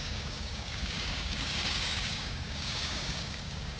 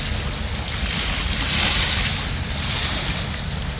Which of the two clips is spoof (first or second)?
first